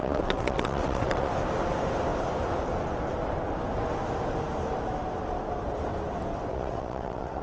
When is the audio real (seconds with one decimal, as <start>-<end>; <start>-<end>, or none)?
1.3-6.5